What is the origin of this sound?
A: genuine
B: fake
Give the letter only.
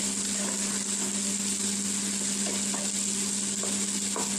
A